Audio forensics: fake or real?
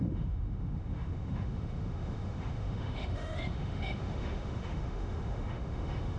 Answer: fake